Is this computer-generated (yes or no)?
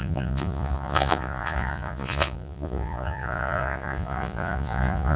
yes